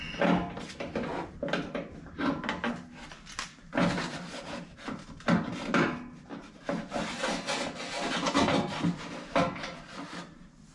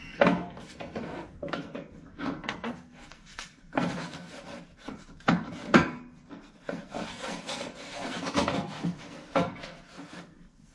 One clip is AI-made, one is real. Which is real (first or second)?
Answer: first